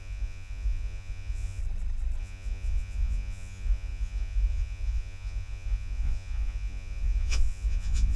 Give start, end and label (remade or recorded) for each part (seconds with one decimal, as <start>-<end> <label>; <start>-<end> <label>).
0.0-1.6 remade; 1.6-2.2 recorded; 2.2-8.2 remade